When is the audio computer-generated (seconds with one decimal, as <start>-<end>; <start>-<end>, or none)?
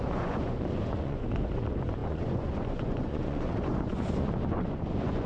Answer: 0.0-5.3